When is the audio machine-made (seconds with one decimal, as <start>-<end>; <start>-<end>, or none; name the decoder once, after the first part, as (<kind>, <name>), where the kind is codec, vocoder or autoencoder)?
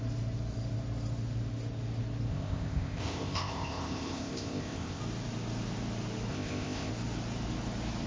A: 2.3-5.0 (codec, ZipCodec); 6.3-6.9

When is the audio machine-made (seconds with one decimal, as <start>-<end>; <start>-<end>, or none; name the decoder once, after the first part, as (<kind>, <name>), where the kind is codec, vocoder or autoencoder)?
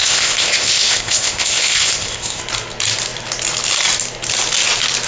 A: 0.0-2.4 (codec, ZipCodec)